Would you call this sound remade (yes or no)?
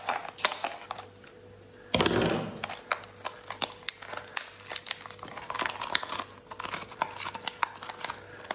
no